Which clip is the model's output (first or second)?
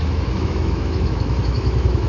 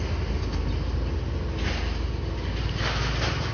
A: first